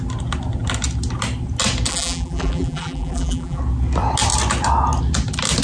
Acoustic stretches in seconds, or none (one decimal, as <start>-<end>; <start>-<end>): 0.0-1.9; 3.6-5.6